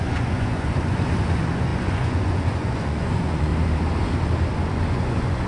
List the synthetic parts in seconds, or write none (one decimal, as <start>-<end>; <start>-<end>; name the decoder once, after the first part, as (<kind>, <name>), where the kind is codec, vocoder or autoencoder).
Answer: 0.0-3.5 (vocoder, Vocos); 4.5-5.5